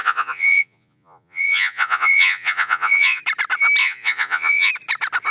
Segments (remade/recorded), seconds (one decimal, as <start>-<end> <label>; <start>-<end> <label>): 0.0-3.2 remade; 3.2-3.8 recorded; 3.8-4.7 remade; 4.7-5.3 recorded